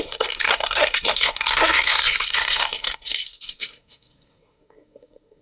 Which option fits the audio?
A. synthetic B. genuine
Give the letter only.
A